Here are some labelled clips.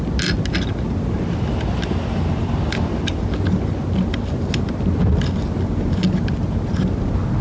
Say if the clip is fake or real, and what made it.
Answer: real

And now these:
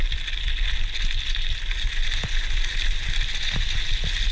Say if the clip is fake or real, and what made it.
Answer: real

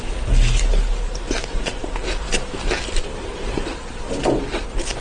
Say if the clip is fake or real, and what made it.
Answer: real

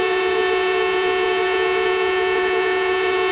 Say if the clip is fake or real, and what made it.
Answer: fake, vocoder, Vocos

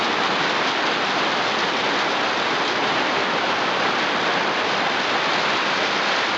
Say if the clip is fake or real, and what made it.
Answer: real